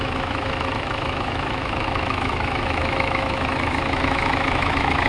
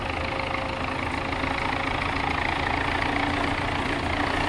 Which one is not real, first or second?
first